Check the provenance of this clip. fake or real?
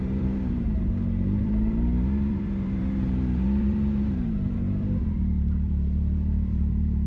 fake